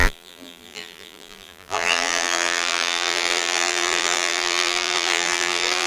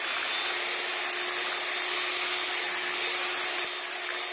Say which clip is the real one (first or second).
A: second